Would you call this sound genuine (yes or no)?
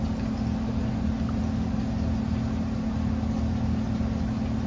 yes